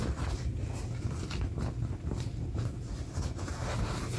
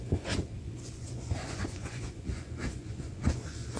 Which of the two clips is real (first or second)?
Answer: first